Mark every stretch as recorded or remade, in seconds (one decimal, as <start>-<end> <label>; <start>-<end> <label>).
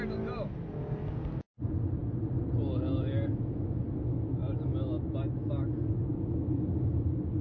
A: 0.0-7.4 recorded